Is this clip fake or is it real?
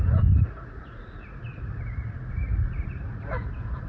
fake